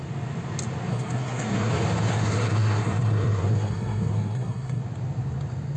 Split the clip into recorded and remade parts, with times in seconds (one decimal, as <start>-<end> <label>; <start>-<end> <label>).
0.0-0.9 recorded; 0.9-1.7 remade; 1.7-2.1 recorded; 2.1-4.8 remade; 4.8-5.8 recorded

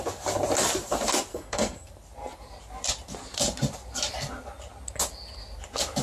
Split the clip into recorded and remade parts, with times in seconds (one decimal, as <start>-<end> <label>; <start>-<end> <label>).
0.0-1.3 recorded; 1.3-1.9 remade; 1.9-6.0 recorded

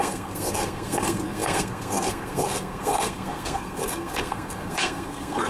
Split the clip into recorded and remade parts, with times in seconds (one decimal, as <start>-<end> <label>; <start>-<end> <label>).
0.0-5.5 remade

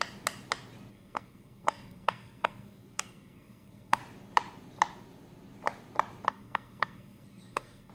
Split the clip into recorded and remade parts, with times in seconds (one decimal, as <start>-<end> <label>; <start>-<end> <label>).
0.0-0.9 recorded; 0.9-4.0 remade; 4.0-6.3 recorded; 6.3-7.9 remade

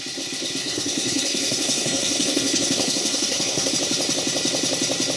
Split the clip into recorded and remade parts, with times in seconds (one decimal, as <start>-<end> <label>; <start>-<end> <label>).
0.0-0.6 recorded; 0.6-3.7 remade; 3.7-5.2 recorded

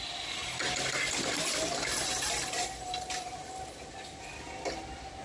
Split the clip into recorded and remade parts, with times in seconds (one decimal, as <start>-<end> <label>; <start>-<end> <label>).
0.0-5.2 recorded

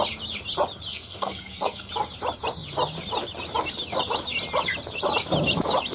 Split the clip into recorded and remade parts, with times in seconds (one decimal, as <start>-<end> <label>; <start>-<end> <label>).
0.0-0.9 recorded; 0.9-1.9 remade; 1.9-5.9 recorded